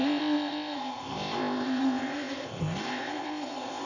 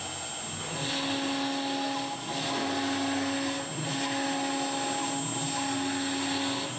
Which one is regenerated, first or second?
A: first